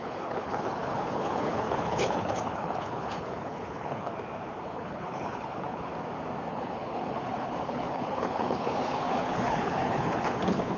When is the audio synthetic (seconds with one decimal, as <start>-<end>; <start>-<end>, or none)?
0.0-4.1; 4.6-5.9; 6.5-10.8